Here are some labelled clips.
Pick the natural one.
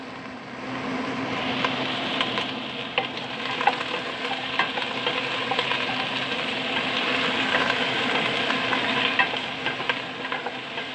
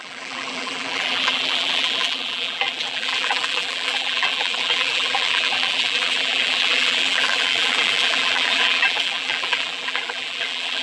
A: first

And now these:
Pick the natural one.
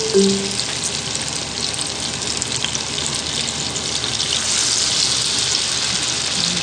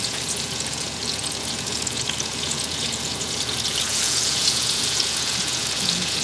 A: first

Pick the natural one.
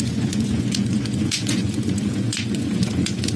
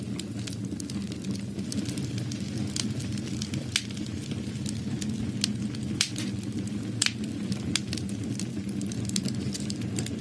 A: second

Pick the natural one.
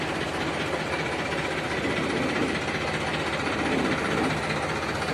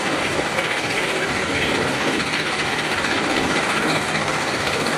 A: first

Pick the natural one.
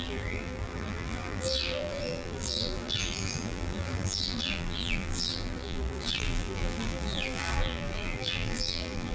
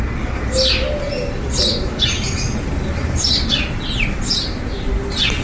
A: second